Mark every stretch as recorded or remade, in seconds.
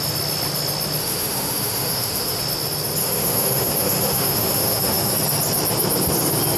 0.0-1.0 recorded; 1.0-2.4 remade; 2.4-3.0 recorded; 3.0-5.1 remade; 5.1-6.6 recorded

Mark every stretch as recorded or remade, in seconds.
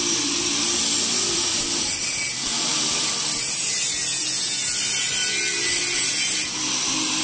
0.0-4.1 remade; 4.1-4.9 recorded; 4.9-7.2 remade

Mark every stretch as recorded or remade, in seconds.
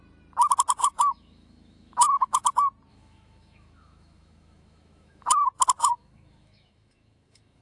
0.0-0.8 recorded; 0.8-2.5 remade; 2.5-2.9 recorded; 2.9-5.3 remade; 5.3-5.8 recorded; 5.8-7.6 remade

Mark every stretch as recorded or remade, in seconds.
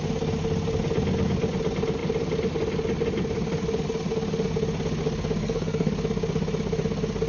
0.0-5.4 recorded; 5.4-5.9 remade; 5.9-7.3 recorded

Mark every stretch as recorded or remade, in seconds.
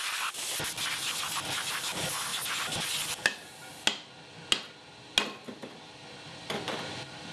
0.0-7.3 recorded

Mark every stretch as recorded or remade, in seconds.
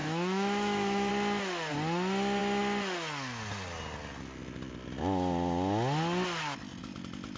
0.0-1.1 remade; 1.1-7.4 recorded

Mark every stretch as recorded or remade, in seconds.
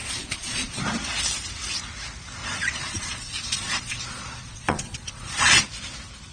0.0-0.8 remade; 0.8-2.4 recorded; 2.4-5.6 remade; 5.6-6.3 recorded